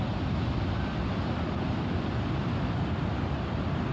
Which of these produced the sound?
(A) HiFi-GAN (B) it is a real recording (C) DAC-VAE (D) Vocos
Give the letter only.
B